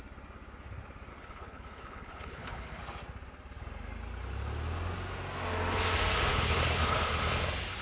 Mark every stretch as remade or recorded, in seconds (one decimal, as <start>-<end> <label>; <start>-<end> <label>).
0.0-1.1 recorded; 1.1-2.8 remade; 2.8-6.3 recorded; 6.3-7.1 remade; 7.1-7.8 recorded

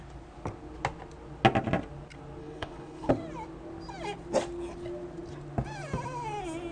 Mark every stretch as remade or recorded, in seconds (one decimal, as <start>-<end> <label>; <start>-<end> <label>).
0.0-2.4 recorded; 2.4-3.1 remade; 3.1-6.7 recorded

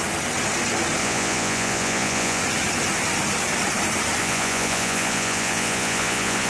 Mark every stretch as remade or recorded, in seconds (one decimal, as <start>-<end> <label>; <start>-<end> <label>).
0.0-1.0 recorded; 1.0-2.4 remade; 2.4-4.2 recorded; 4.2-6.5 remade

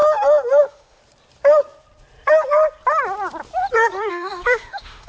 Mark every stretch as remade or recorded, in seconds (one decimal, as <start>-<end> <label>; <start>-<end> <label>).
0.0-0.6 recorded; 0.6-1.0 remade; 1.0-4.1 recorded; 4.1-5.1 remade

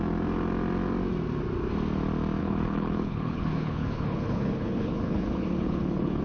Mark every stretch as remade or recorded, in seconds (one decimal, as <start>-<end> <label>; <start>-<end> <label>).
0.0-2.4 recorded; 2.4-6.2 remade

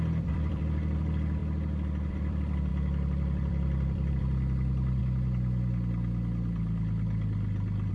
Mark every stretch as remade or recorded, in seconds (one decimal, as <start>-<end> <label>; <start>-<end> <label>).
0.0-1.4 remade; 1.4-2.1 recorded; 2.1-5.0 remade; 5.0-7.9 recorded